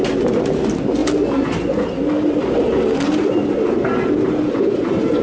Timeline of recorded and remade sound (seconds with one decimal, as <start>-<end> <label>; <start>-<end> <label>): 0.0-5.2 recorded